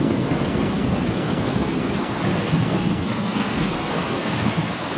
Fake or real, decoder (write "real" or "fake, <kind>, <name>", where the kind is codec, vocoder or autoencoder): fake, codec, SNAC